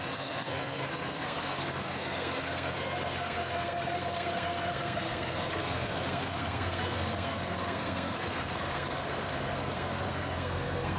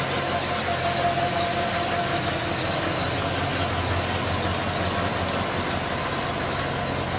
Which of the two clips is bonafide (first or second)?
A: second